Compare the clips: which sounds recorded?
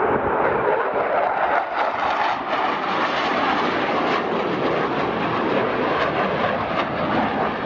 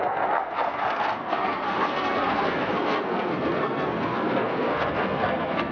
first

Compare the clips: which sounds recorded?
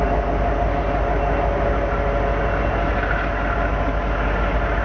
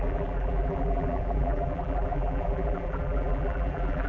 first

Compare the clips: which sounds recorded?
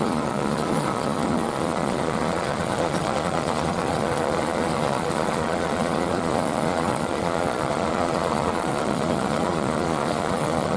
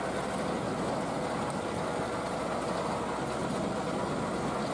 second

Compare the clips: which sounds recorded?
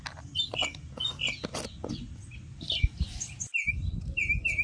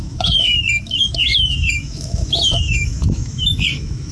first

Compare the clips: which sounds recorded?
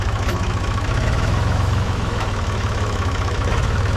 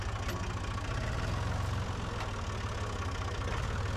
second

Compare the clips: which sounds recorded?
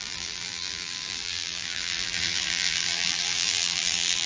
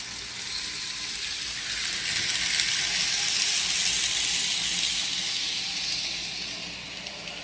second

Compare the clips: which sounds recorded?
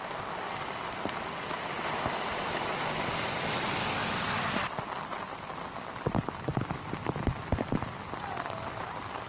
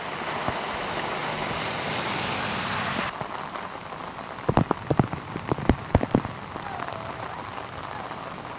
second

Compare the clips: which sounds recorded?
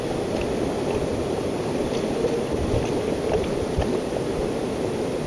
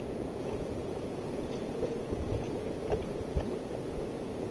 first